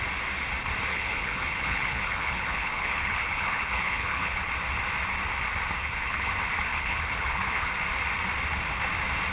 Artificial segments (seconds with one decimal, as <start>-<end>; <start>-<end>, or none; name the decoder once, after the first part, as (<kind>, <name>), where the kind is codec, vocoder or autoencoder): 0.9-4.5 (codec, HILCodec); 5.8-6.3; 6.7-7.7